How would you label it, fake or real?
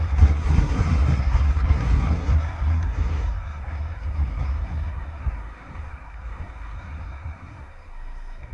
fake